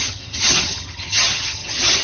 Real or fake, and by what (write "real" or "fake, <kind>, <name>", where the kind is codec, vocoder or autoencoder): fake, vocoder, HiFi-GAN